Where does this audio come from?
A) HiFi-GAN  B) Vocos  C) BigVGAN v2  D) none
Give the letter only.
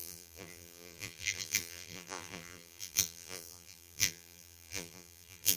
C